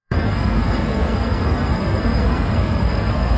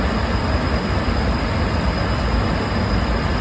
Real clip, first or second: second